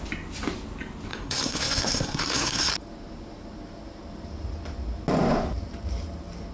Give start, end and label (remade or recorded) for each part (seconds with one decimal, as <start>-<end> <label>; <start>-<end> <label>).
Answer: 0.0-1.1 recorded; 1.1-2.7 remade; 2.7-6.5 recorded